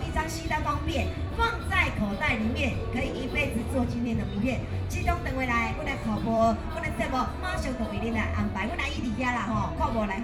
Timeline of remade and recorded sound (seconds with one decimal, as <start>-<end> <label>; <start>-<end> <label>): 0.0-0.7 recorded; 0.7-2.0 remade; 2.0-2.8 recorded; 2.8-4.4 remade; 4.4-6.0 recorded; 6.0-7.2 remade; 7.2-10.2 recorded